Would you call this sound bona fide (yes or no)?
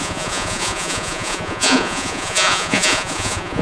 no